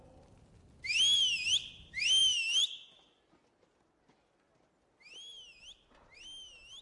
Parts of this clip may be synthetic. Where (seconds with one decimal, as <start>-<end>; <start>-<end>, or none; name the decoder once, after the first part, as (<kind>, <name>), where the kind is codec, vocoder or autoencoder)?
none

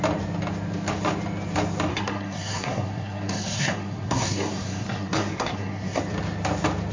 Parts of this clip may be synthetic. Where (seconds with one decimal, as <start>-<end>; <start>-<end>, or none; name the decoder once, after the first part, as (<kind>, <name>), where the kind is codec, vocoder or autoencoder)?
1.9-6.0 (codec, SNAC)